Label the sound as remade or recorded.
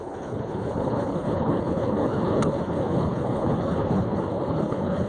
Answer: remade